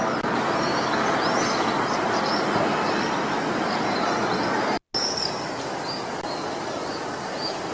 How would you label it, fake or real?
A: real